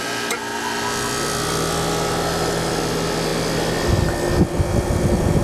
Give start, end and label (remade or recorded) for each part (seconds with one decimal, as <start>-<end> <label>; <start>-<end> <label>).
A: 0.0-5.4 recorded